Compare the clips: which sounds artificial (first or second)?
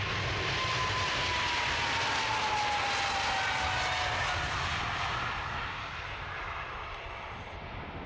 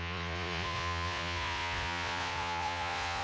second